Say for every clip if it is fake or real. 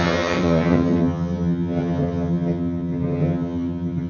fake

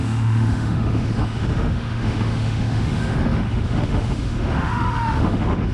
fake